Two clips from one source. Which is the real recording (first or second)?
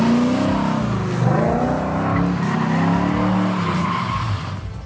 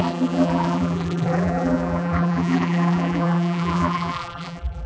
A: first